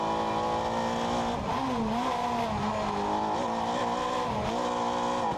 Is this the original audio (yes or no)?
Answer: yes